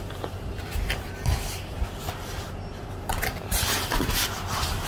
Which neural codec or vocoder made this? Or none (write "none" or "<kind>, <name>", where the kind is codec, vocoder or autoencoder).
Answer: vocoder, BigVGAN v2